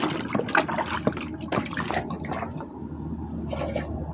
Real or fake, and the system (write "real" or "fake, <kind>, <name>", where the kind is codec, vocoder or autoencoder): real